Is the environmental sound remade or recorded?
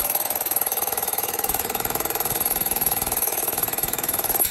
remade